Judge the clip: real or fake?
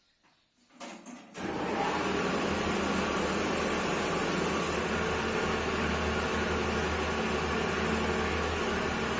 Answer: real